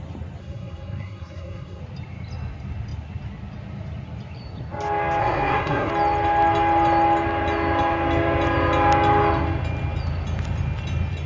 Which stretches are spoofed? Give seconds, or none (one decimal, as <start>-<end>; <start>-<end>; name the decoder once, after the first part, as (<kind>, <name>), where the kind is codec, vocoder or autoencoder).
0.4-1.8 (codec, SNAC); 5.2-5.9